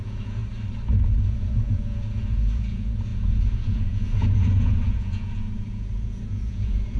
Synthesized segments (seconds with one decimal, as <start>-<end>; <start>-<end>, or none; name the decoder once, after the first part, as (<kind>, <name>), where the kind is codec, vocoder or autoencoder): 0.0-0.4 (vocoder, Vocos); 1.0-7.0

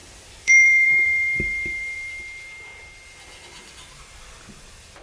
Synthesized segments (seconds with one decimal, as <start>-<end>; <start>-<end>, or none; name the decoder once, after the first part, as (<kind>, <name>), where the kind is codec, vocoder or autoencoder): 0.0-2.2 (vocoder, BigVGAN v2)

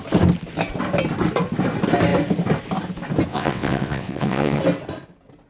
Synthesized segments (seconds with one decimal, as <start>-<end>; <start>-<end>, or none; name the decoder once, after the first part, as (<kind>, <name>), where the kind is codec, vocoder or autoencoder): 3.3-4.6 (vocoder, WaveNeXt)

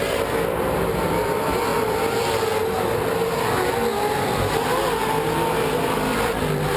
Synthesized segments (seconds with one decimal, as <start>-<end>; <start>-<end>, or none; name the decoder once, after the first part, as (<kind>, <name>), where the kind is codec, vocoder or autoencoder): 0.6-1.7 (vocoder, BigVGAN v2); 5.8-6.8

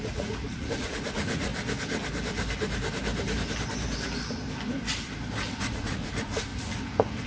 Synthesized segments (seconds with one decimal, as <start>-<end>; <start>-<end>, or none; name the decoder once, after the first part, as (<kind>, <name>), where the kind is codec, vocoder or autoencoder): 0.0-1.5 (vocoder, Vocos); 5.6-6.5

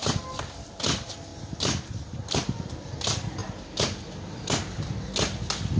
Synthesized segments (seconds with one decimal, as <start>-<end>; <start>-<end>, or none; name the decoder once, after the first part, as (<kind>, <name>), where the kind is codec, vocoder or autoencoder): 0.8-1.3 (vocoder, BigVGAN v2); 2.2-3.4

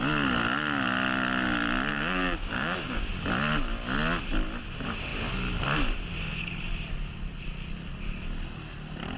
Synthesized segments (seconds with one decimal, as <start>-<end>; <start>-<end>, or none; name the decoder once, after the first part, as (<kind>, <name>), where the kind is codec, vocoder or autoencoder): 1.9-3.1 (codec, DAC)

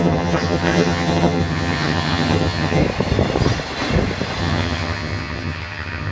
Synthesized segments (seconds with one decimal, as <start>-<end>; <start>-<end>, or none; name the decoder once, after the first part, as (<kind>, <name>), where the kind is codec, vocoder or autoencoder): 0.0-2.8 (vocoder, HiFi-GAN); 4.4-6.1